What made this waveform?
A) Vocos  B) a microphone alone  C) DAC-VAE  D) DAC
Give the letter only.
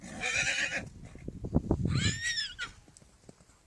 B